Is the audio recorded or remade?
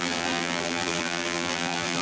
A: remade